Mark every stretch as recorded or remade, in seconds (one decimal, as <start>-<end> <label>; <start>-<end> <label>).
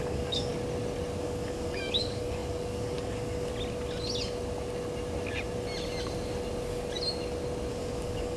0.0-0.5 remade; 0.5-1.2 recorded; 1.2-3.5 remade; 3.5-7.7 recorded; 7.7-8.4 remade